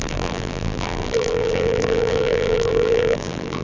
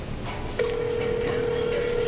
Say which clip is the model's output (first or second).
first